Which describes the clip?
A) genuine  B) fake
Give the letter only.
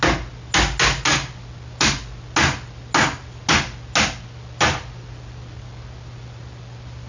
A